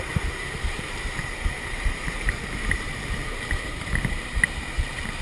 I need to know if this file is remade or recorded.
remade